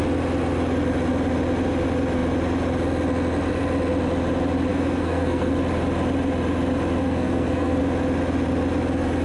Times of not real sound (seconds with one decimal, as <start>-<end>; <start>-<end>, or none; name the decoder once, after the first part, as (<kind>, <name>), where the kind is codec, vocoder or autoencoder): 4.7-5.5 (codec, SNAC); 7.0-7.8